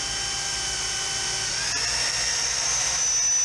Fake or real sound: real